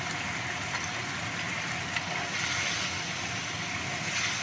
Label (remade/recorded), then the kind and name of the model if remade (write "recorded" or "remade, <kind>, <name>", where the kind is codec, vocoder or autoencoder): recorded